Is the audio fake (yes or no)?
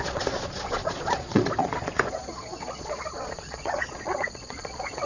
yes